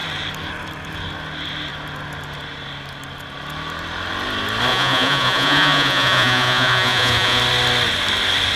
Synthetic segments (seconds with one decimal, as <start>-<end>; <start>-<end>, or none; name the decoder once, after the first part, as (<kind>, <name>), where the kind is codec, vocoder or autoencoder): 4.7-7.4 (vocoder, Vocos)

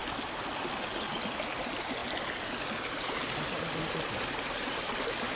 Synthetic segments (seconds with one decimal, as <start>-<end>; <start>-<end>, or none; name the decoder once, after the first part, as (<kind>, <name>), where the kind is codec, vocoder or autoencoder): none

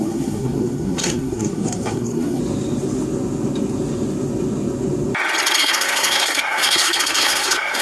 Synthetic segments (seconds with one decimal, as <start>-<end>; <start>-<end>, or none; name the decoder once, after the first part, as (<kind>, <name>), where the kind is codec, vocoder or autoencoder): 0.0-2.4 (codec, SNAC); 5.6-7.8

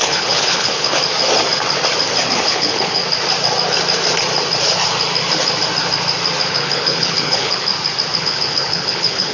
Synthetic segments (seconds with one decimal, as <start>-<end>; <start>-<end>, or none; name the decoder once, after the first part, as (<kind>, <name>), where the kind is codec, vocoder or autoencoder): 0.0-1.0 (codec, HILCodec); 2.3-3.0; 6.5-7.7; 8.2-9.3

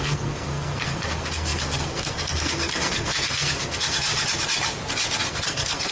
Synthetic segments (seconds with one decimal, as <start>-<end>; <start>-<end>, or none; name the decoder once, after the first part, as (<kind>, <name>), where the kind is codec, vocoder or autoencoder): 0.0-4.1 (codec, SNAC); 5.3-5.9

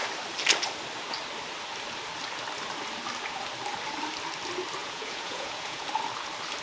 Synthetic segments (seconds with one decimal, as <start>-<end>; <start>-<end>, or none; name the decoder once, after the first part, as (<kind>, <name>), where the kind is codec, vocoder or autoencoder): 4.8-5.9 (vocoder, Vocos)

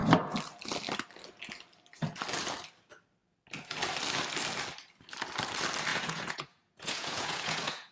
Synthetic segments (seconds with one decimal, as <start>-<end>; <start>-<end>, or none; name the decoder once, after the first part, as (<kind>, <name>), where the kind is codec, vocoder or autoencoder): 5.9-7.9 (vocoder, Vocos)

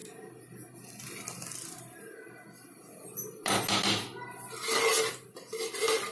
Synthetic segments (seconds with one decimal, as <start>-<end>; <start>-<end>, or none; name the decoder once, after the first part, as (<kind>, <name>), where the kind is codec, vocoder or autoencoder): none